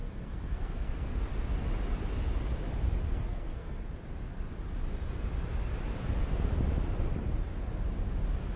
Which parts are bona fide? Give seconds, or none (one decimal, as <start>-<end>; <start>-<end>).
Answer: 1.3-3.1; 3.8-8.6